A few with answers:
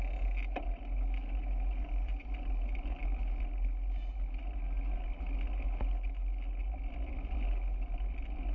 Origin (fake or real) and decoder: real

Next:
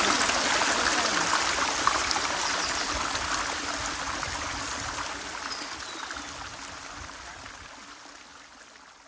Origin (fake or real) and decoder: real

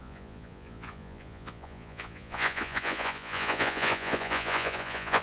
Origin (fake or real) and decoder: fake, vocoder, Vocos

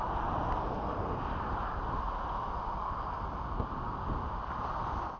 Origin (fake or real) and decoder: real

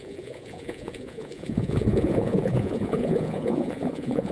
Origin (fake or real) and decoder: fake, vocoder, Vocos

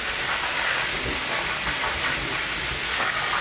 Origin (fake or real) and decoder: real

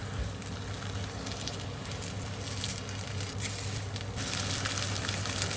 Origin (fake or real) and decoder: real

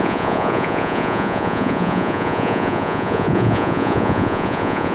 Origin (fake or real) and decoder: fake, vocoder, Vocos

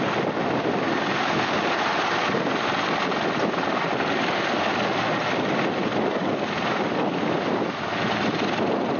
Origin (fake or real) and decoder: real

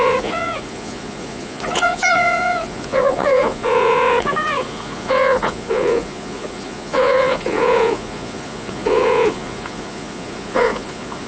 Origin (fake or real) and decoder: fake, vocoder, Vocos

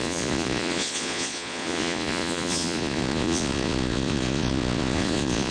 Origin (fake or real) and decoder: fake, vocoder, Vocos